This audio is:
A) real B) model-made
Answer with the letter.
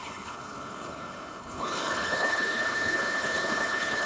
B